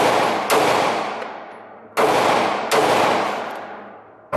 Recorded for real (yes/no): yes